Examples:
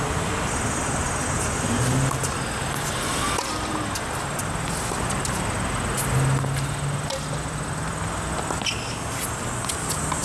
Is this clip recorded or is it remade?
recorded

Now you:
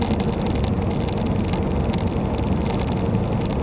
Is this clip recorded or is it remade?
recorded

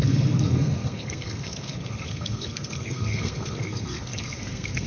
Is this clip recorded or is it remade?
remade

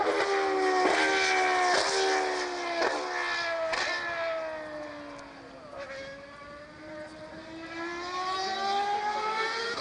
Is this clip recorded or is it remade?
recorded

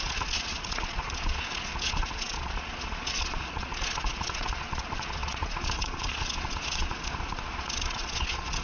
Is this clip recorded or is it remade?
remade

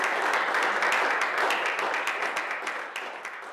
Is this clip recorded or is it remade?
recorded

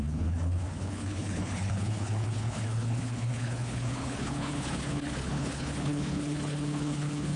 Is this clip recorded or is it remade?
remade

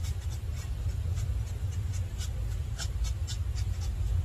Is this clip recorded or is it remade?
recorded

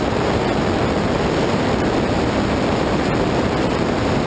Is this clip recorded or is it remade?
recorded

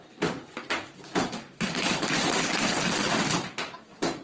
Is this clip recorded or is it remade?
recorded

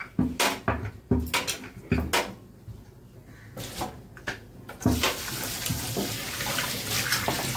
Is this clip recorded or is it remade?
recorded